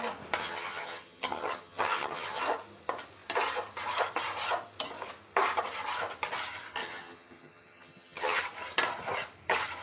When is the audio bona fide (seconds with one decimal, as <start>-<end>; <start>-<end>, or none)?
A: 0.0-0.4; 2.4-6.8; 8.4-9.8